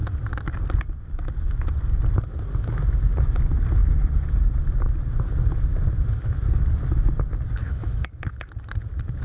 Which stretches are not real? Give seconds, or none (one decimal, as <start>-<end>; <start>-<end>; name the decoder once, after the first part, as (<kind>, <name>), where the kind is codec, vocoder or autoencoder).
7.6-8.5 (autoencoder, DAC-VAE)